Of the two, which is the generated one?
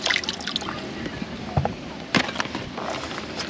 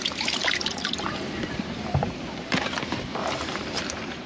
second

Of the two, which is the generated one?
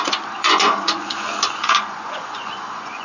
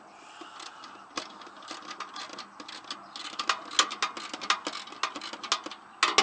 first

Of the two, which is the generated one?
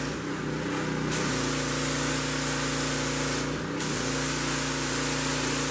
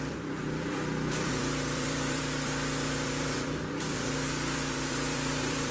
second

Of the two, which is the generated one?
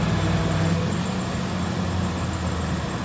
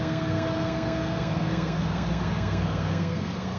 second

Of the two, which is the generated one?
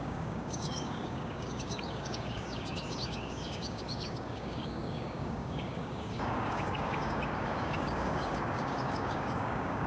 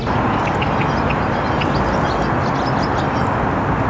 first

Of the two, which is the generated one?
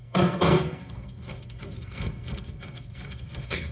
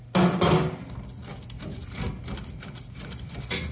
first